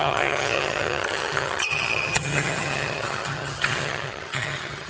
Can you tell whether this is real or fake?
fake